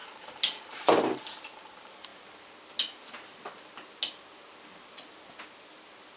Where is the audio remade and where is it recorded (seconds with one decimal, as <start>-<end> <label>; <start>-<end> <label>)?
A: 0.0-6.2 recorded